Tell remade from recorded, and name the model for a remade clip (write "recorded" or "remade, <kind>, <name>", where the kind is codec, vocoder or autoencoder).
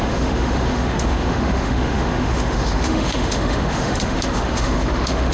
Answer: remade, autoencoder, DAC-VAE